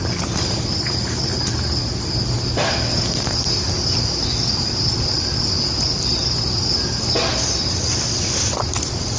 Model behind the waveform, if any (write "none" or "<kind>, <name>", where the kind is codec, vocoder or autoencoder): none